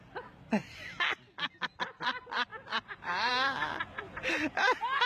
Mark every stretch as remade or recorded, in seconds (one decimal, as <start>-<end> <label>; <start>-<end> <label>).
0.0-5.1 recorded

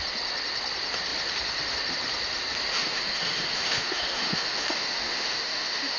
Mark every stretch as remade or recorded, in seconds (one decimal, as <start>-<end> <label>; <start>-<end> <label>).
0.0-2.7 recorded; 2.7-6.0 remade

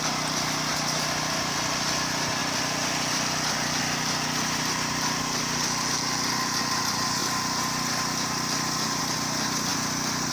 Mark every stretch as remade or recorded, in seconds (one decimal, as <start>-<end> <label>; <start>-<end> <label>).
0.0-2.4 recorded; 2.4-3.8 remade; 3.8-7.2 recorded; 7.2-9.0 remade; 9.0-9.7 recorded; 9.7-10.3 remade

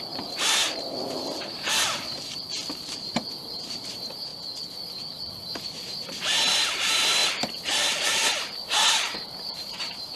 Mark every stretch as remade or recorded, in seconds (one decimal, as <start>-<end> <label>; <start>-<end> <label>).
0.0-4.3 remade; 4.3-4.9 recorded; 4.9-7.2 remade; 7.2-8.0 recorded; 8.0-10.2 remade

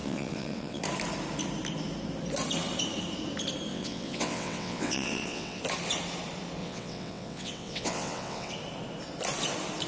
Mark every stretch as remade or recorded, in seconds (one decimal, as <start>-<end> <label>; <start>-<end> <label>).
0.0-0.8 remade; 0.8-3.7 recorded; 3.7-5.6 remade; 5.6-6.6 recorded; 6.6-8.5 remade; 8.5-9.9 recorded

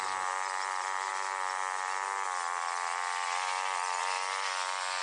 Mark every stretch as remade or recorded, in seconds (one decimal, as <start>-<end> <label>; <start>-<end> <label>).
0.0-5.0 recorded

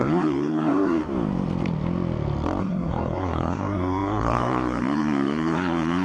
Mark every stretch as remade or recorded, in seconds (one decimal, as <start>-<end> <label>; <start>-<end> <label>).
0.0-1.0 remade; 1.0-2.6 recorded; 2.6-6.0 remade